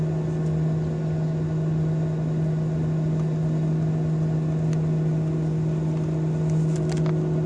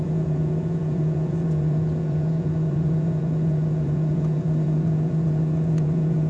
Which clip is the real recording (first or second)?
first